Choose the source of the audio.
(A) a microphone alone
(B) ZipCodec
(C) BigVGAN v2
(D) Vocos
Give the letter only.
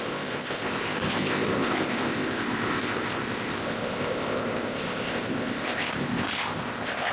B